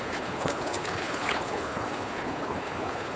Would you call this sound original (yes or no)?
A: no